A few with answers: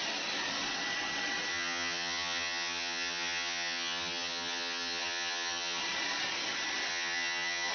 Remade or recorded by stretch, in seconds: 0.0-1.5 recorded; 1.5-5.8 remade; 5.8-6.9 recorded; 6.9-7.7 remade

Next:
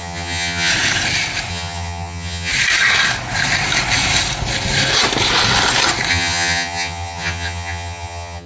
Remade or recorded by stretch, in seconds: 0.0-0.7 remade; 0.7-1.5 recorded; 1.5-2.5 remade; 2.5-6.1 recorded; 6.1-8.5 remade

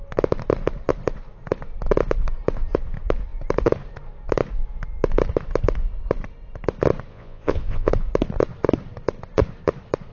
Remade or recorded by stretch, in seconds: 0.0-7.1 recorded; 7.1-7.9 remade; 7.9-10.1 recorded

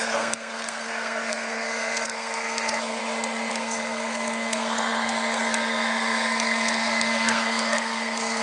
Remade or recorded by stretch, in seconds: 0.0-3.0 remade; 3.0-3.5 recorded; 3.5-8.4 remade